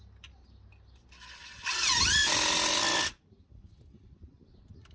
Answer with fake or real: real